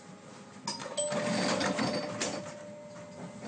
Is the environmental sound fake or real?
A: real